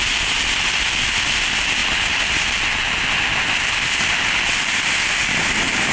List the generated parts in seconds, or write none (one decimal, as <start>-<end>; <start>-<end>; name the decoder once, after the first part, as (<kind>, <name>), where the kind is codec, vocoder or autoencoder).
none